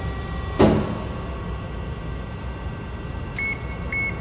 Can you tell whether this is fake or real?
real